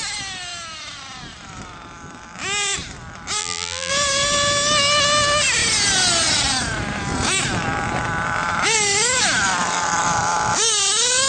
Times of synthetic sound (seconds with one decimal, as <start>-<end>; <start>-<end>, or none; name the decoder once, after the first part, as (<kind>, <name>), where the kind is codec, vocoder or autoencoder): 3.4-3.9 (vocoder, BigVGAN v2)